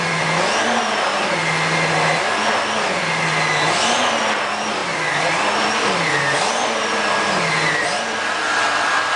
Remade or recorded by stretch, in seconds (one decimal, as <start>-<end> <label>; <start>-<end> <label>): 0.0-9.2 recorded